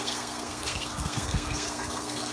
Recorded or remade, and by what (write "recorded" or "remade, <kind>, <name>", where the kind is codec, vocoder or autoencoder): remade, codec, SNAC